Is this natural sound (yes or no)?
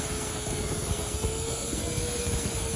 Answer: no